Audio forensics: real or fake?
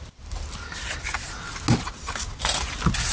real